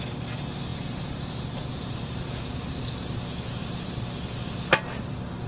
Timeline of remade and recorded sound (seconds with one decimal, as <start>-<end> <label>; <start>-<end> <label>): 0.0-5.5 recorded